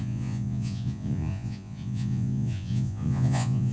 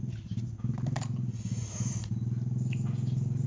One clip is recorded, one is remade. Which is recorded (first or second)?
second